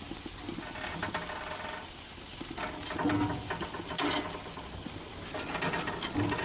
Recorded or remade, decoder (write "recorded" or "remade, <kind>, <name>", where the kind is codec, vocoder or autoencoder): recorded